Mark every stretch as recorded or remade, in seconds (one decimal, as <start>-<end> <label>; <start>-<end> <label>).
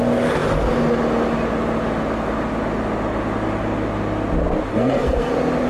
0.0-4.7 recorded; 4.7-5.3 remade; 5.3-5.7 recorded